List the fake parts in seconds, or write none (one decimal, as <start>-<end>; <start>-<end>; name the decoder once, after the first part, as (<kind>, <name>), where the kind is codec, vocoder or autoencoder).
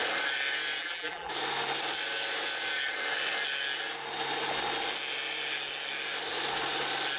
0.8-1.3 (vocoder, BigVGAN v2)